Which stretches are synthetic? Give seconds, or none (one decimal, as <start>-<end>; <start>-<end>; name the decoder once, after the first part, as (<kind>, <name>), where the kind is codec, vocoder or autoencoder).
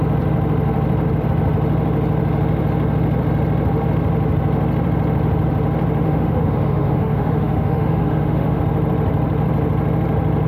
6.0-8.6 (autoencoder, DAC-VAE)